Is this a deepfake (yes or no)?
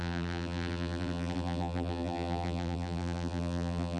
yes